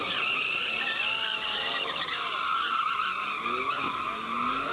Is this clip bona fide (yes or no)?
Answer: yes